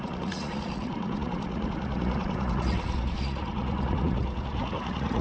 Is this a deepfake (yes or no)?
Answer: yes